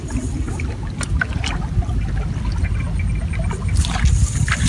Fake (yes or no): no